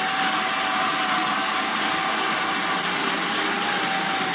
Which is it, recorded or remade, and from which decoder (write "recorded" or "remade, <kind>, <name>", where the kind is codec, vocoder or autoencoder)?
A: recorded